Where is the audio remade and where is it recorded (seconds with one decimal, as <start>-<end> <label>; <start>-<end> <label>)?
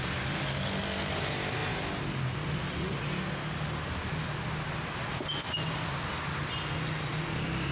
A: 0.0-7.7 recorded